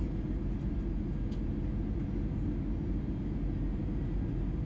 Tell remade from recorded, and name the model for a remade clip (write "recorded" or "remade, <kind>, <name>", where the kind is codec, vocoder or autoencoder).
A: recorded